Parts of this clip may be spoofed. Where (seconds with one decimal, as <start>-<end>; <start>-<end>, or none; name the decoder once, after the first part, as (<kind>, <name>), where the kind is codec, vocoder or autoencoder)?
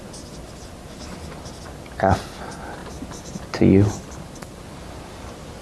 none